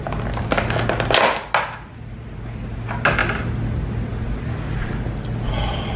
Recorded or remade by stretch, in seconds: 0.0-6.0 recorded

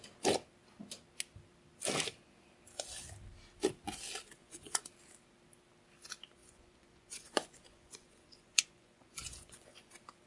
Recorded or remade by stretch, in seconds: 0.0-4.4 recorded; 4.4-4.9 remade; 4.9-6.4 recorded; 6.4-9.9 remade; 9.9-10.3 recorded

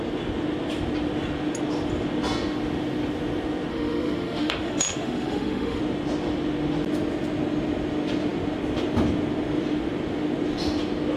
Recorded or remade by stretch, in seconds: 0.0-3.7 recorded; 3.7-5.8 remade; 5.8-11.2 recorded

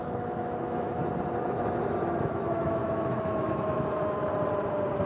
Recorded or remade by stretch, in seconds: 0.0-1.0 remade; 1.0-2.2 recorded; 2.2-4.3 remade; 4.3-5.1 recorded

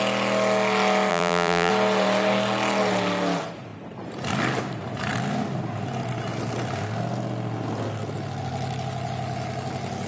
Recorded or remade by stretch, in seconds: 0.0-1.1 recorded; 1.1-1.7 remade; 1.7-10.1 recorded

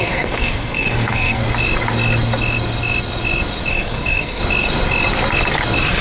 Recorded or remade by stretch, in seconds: 0.0-1.4 remade; 1.4-3.7 recorded; 3.7-4.4 remade; 4.4-6.0 recorded

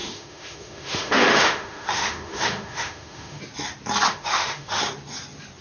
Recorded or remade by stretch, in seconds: 0.0-3.4 remade; 3.4-4.1 recorded; 4.1-4.8 remade; 4.8-5.6 recorded